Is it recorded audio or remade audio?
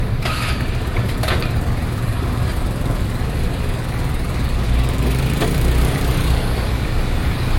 remade